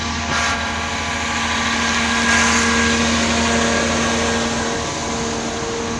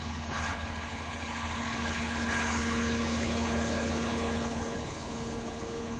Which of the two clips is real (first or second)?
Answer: first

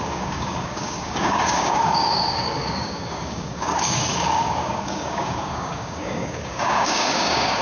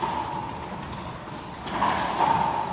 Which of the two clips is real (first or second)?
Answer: second